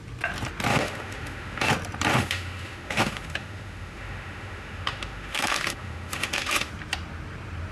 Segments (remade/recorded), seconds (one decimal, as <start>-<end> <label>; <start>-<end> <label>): 0.0-0.7 recorded; 0.7-1.7 remade; 1.7-2.1 recorded; 2.1-6.7 remade; 6.7-7.7 recorded